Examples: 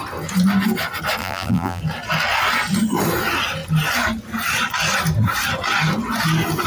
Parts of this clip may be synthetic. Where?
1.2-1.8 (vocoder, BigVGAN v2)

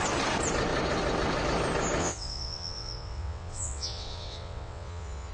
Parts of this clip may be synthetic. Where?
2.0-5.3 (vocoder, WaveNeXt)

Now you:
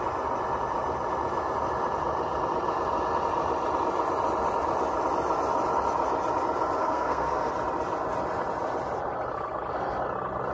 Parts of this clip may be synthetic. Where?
6.8-7.5 (codec, SNAC)

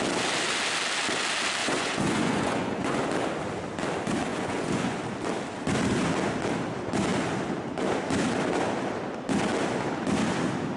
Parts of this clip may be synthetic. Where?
1.6-3.0 (vocoder, Vocos); 4.3-5.0